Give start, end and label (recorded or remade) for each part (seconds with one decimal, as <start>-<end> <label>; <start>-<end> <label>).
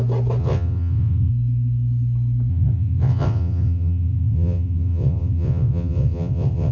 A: 0.0-0.4 recorded; 0.4-1.3 remade; 1.3-2.5 recorded; 2.5-6.7 remade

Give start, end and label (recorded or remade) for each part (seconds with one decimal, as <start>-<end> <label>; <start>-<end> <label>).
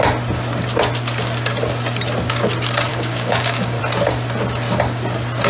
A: 0.0-2.9 recorded; 2.9-3.8 remade; 3.8-5.5 recorded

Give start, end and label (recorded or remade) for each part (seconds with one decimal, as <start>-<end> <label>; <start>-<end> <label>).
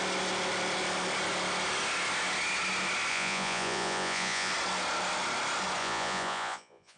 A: 0.0-3.1 recorded; 3.1-4.5 remade; 4.5-5.8 recorded; 5.8-7.0 remade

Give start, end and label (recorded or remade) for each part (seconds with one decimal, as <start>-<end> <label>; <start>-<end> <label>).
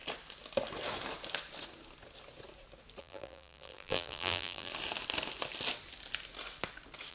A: 0.0-3.0 recorded; 3.0-4.7 remade; 4.7-7.1 recorded